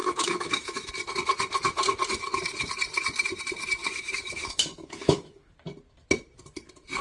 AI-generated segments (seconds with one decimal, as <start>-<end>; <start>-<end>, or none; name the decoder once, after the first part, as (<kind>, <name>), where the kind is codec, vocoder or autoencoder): 0.0-0.9 (autoencoder, DAC-VAE); 3.8-5.5